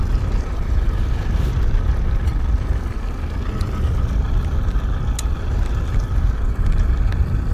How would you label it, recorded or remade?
recorded